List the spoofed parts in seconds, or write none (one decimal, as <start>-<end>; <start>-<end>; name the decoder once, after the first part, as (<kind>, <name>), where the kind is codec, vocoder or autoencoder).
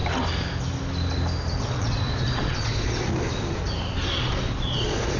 1.6-3.1 (vocoder, Vocos); 4.2-5.2